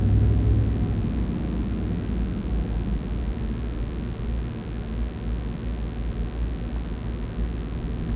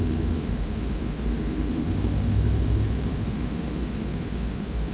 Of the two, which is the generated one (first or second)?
second